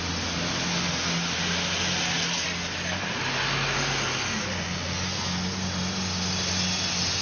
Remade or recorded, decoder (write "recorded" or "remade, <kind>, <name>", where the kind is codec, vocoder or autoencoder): recorded